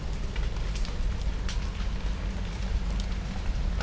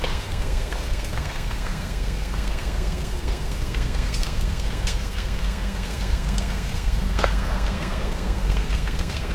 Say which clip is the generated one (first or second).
second